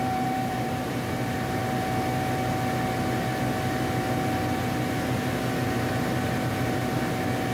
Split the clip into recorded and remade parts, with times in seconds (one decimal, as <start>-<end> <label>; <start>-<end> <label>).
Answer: 0.0-1.6 remade; 1.6-4.6 recorded; 4.6-7.5 remade